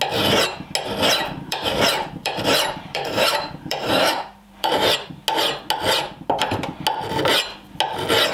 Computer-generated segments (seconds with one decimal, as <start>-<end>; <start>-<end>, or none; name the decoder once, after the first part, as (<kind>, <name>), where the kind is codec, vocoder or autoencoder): 1.2-5.1 (vocoder, BigVGAN v2)